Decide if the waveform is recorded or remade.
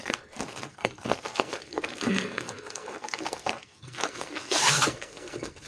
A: remade